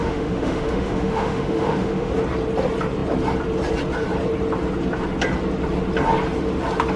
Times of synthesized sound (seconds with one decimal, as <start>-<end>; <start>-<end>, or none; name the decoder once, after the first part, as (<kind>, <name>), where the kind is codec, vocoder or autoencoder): 0.0-2.1 (autoencoder, DAC-VAE)